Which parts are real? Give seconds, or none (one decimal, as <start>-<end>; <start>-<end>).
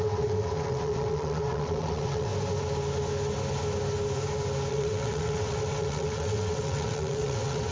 2.3-4.7